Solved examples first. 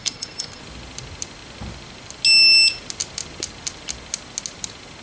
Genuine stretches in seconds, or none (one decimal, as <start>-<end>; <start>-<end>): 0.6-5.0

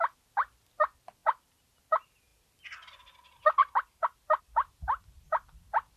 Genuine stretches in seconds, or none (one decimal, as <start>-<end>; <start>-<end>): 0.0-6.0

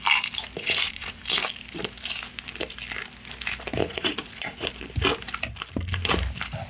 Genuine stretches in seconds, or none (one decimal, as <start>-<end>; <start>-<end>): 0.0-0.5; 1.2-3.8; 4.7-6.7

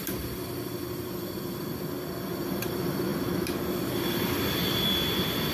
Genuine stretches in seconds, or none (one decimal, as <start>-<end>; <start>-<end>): 0.0-5.5